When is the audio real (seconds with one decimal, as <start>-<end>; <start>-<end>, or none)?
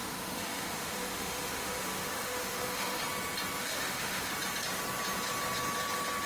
3.0-3.6; 4.3-6.3